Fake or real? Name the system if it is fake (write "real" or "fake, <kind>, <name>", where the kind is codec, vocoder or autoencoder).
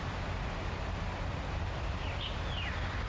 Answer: real